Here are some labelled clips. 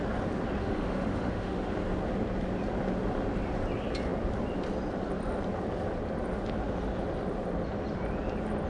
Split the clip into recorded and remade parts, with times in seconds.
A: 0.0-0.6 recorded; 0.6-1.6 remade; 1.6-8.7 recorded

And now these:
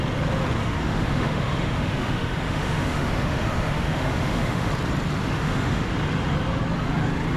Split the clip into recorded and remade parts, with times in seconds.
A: 0.0-0.6 recorded; 0.6-4.7 remade; 4.7-5.2 recorded; 5.2-5.9 remade; 5.9-7.4 recorded